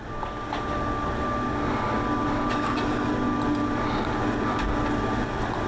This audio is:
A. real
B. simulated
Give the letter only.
A